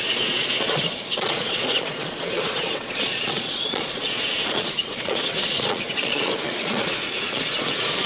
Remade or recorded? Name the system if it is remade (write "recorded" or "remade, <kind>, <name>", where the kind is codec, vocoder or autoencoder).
remade, vocoder, Vocos